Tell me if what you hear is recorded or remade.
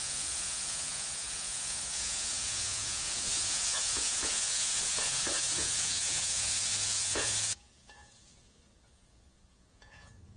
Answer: remade